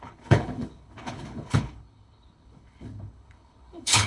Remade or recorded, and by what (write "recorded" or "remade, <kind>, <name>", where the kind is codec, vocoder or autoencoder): remade, codec, HILCodec